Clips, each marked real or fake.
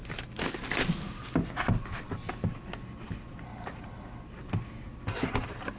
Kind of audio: real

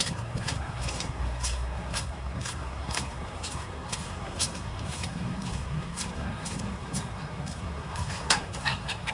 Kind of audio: fake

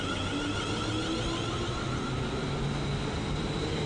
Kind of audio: real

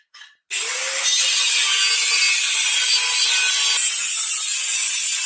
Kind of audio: real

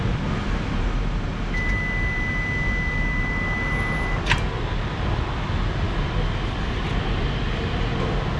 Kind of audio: real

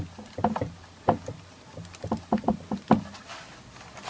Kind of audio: real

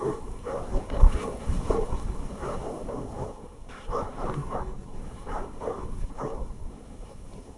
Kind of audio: fake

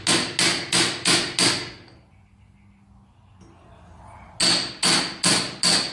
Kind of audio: real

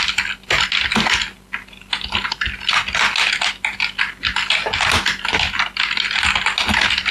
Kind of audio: real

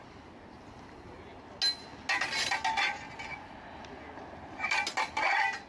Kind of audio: real